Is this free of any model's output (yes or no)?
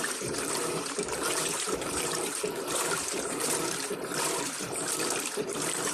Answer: no